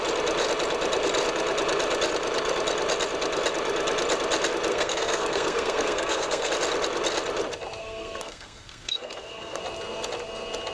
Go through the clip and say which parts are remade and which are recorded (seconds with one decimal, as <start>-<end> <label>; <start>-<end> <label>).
0.0-4.7 recorded; 4.7-6.5 remade; 6.5-7.8 recorded; 7.8-9.6 remade; 9.6-10.7 recorded